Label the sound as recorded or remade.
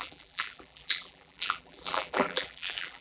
remade